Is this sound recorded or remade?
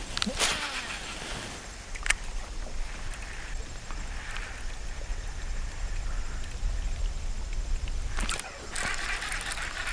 recorded